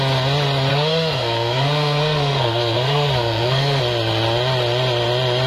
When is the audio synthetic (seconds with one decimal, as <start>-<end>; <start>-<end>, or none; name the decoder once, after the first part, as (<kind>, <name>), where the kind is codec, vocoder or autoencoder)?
0.7-3.8 (codec, SNAC)